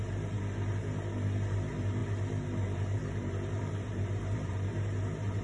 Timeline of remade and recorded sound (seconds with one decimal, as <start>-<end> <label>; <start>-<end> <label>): 0.0-2.0 recorded; 2.0-5.4 remade